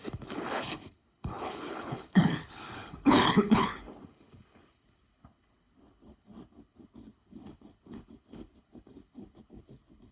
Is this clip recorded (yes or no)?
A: no